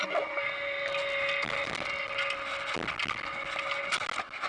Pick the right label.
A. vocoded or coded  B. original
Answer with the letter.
B